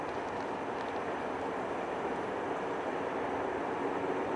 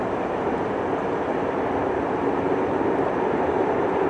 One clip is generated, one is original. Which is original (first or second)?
first